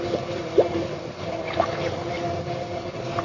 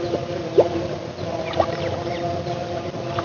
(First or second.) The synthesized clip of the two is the first